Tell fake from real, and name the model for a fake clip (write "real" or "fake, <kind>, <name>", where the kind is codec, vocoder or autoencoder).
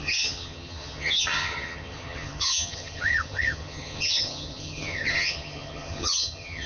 fake, vocoder, HiFi-GAN